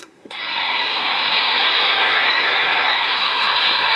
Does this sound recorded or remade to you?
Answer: remade